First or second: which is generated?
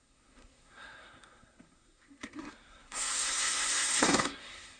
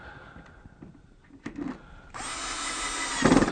first